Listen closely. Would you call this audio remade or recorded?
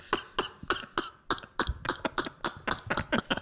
recorded